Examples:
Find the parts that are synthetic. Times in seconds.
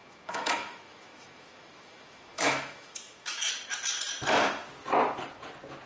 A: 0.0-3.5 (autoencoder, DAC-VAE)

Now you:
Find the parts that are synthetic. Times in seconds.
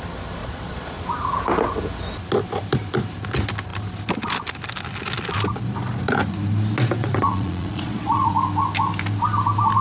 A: 0.4-1.0 (vocoder, Vocos); 7.0-8.3